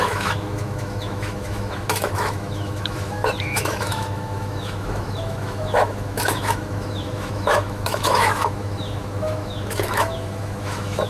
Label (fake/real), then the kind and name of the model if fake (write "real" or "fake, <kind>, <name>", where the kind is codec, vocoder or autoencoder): fake, autoencoder, DAC-VAE